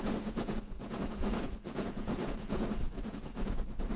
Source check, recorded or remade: remade